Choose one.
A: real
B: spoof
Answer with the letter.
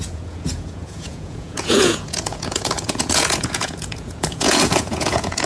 B